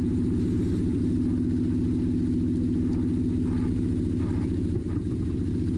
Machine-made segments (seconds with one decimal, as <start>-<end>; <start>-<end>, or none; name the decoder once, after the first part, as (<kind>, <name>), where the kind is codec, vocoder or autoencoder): 0.0-1.0 (vocoder, BigVGAN v2); 4.2-5.8